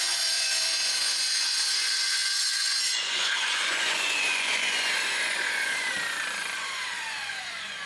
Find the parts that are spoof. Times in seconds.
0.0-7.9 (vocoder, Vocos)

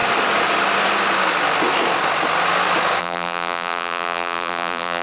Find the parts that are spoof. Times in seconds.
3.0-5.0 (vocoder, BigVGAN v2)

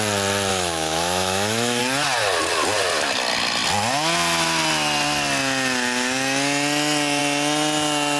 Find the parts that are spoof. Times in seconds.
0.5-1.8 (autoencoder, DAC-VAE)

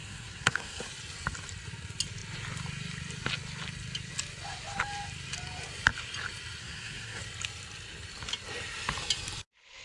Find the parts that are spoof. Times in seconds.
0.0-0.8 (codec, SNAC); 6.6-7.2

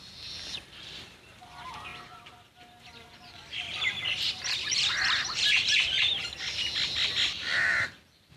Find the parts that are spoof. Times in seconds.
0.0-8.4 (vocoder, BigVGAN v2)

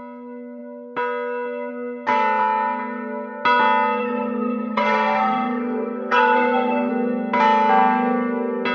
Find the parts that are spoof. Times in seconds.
4.0-6.9 (codec, SNAC)